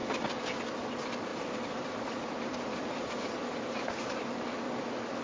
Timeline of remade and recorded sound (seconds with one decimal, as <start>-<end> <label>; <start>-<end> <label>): 0.0-1.3 recorded; 1.3-4.4 remade; 4.4-5.2 recorded